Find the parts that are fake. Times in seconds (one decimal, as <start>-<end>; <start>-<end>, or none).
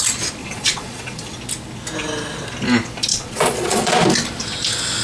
0.4-1.4; 3.1-3.9